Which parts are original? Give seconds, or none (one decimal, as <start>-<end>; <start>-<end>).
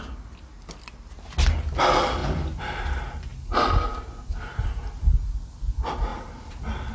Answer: 0.0-6.9